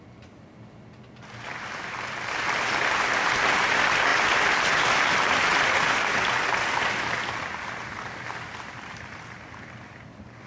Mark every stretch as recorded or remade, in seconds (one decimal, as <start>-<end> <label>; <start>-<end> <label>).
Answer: 0.0-10.5 recorded